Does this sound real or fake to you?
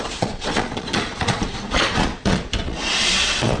fake